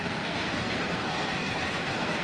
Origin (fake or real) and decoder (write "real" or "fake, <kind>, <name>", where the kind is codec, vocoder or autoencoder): fake, codec, SNAC